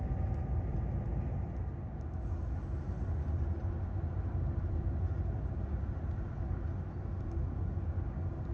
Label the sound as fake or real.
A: real